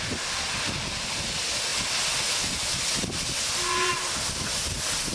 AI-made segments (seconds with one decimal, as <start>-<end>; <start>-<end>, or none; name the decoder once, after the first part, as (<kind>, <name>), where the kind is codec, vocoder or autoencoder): none